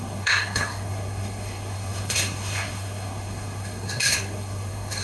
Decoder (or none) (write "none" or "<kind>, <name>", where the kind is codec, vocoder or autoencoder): codec, SNAC